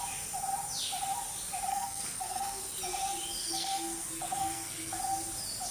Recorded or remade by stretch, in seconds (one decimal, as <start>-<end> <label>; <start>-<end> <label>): 0.0-1.7 recorded; 1.7-2.6 remade; 2.6-3.4 recorded; 3.4-5.0 remade; 5.0-5.7 recorded